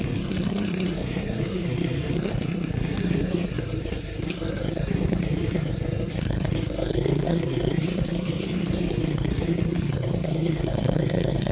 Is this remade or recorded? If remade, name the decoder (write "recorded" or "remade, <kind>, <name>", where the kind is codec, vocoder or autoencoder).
remade, codec, SNAC